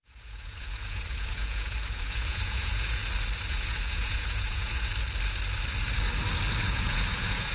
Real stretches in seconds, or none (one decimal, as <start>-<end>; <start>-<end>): 3.0-3.5; 4.9-6.6